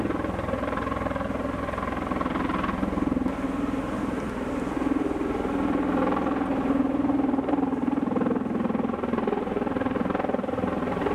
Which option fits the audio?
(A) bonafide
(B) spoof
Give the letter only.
B